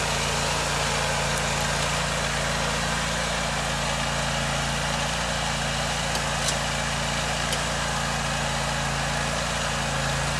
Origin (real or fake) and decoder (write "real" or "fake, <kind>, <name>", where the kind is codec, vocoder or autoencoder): real